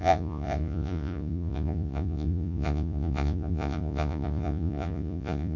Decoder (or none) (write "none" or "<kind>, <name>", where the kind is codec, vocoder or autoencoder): vocoder, Vocos